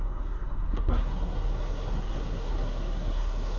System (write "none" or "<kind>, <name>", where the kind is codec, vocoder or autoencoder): codec, SNAC